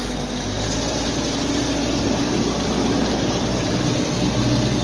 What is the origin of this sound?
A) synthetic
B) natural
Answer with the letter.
B